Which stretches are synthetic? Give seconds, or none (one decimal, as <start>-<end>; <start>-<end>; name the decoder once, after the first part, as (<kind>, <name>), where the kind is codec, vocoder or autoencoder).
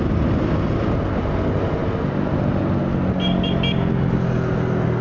none